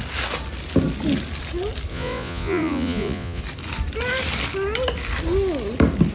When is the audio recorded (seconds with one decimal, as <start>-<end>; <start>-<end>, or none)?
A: 0.0-1.9; 3.4-6.1